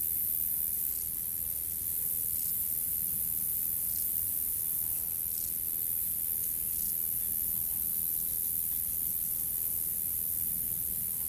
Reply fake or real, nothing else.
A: real